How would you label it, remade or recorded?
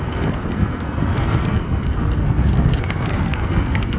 remade